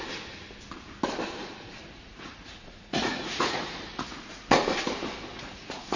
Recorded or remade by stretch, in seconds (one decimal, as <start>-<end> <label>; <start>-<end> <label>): 0.0-1.4 recorded; 1.4-4.7 remade; 4.7-5.3 recorded; 5.3-6.0 remade